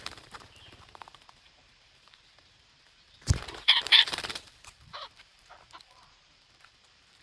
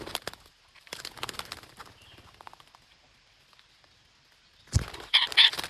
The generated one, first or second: first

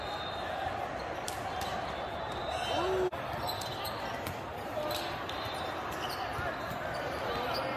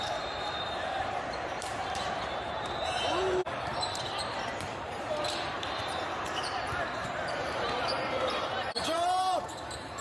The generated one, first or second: second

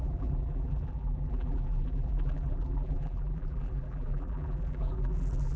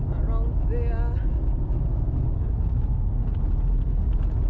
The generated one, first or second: first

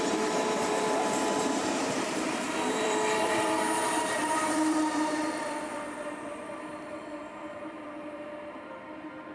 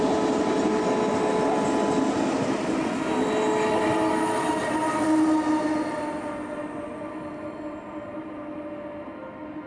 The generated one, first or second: first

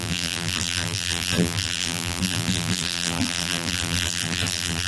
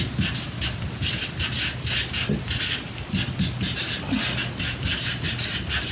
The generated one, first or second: first